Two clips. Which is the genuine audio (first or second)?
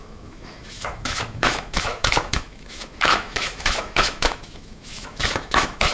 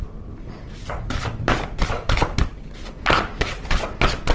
second